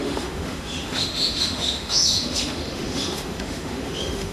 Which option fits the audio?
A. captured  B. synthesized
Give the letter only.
B